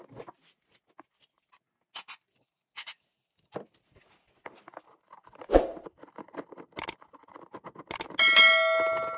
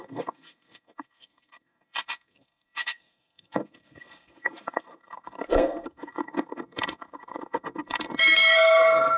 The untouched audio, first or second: first